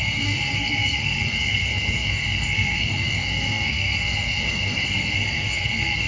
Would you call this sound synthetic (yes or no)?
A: yes